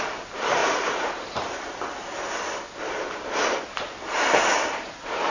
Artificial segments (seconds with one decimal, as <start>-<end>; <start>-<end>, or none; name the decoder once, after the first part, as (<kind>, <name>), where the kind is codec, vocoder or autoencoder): 0.6-1.1 (vocoder, Vocos)